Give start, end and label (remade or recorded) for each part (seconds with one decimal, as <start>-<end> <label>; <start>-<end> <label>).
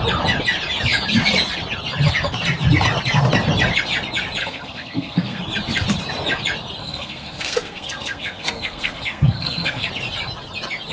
0.0-4.4 recorded; 4.4-5.4 remade; 5.4-6.8 recorded; 6.8-9.9 remade; 9.9-10.9 recorded